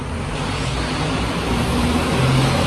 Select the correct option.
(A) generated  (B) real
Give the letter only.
B